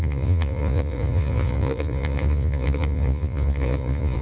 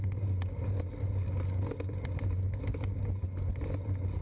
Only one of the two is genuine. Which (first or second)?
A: second